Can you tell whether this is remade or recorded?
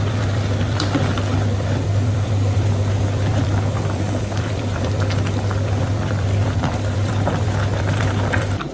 remade